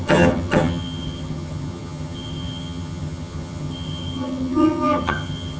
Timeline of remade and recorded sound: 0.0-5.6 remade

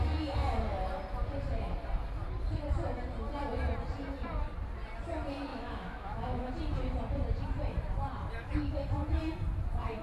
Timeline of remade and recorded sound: 0.0-5.5 recorded; 5.5-6.5 remade; 6.5-10.0 recorded

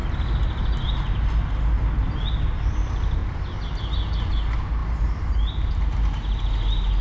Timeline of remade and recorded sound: 0.0-7.0 recorded

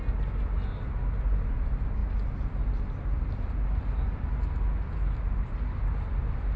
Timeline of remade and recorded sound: 0.0-6.6 recorded